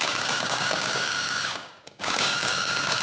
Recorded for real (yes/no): no